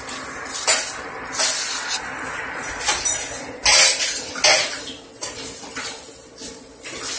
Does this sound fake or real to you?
real